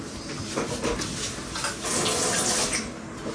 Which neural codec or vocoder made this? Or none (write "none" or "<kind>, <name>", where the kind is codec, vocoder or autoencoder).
none